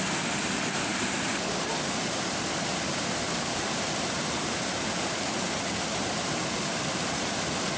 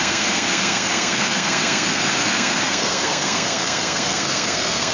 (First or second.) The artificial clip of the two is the second